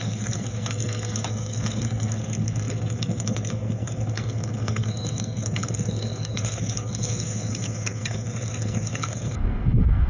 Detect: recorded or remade remade